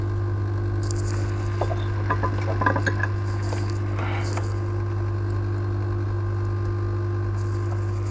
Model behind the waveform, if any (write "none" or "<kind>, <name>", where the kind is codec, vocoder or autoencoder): none